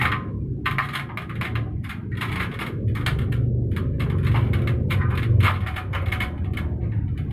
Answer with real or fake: real